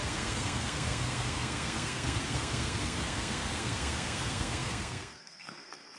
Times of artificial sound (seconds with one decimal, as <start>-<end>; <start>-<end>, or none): 0.0-6.0